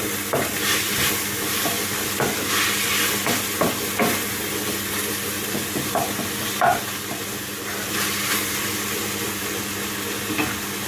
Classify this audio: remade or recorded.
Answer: recorded